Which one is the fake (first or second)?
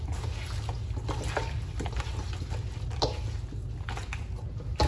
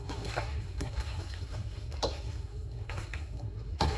second